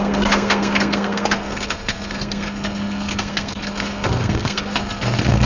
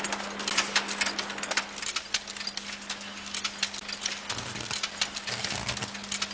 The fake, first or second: first